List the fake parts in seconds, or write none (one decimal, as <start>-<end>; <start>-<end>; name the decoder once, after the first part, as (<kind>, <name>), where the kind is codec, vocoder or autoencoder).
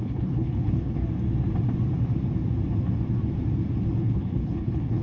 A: 0.0-1.0 (codec, HILCodec); 4.0-5.0